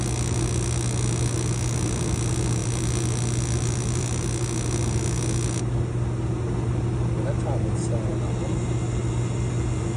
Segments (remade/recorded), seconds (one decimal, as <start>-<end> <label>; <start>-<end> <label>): 0.0-10.0 recorded